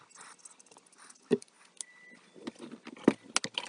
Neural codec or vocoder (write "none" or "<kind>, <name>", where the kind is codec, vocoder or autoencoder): none